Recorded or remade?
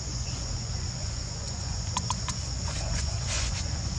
remade